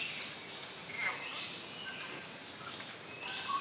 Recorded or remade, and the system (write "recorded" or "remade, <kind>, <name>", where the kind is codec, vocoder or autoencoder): recorded